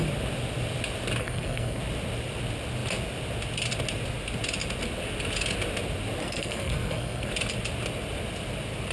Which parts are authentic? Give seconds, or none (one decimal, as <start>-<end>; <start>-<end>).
0.0-1.2; 1.8-6.2; 7.3-8.9